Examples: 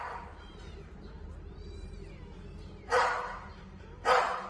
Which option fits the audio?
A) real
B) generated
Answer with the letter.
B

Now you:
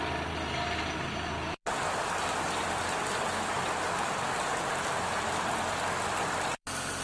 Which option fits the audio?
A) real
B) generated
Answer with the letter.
B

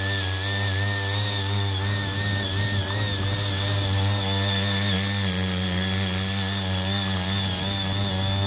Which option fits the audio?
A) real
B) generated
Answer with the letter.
A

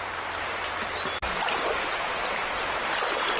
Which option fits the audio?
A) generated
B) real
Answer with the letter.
A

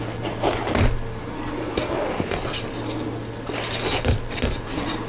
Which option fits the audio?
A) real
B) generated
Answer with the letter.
A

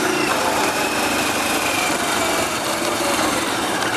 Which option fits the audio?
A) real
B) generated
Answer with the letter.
B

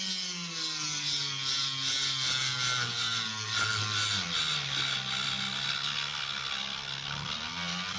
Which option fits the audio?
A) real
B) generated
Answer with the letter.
A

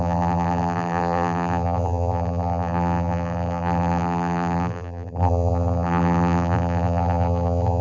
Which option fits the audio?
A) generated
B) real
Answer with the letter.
A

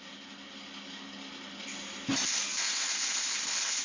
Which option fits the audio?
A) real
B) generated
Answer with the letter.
A